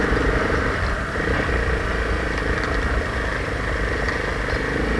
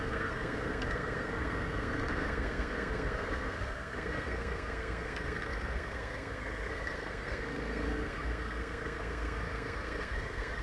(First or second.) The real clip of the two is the first